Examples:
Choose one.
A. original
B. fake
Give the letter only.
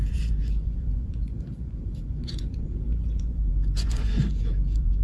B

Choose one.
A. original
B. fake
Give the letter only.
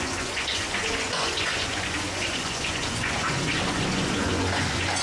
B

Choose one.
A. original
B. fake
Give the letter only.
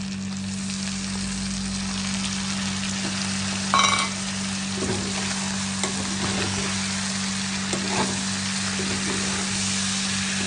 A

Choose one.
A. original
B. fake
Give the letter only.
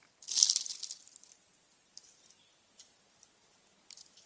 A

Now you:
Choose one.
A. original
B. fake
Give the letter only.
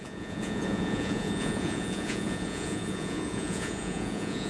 B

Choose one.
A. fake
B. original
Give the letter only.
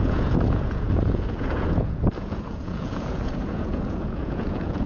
A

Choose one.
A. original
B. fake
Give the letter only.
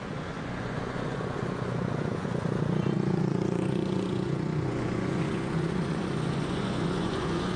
B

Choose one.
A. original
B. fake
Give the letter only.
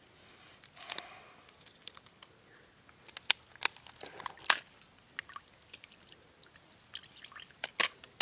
A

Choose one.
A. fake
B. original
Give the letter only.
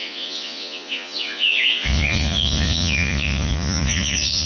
A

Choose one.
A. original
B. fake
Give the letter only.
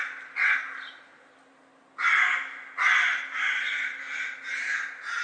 A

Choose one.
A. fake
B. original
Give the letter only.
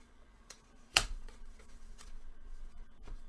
A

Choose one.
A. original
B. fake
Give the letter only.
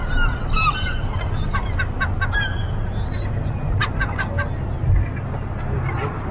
A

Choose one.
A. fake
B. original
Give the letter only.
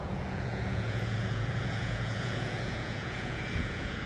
A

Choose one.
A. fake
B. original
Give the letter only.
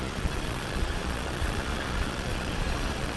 A